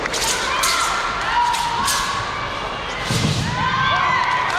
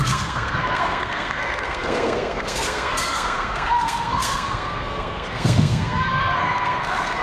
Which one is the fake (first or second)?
second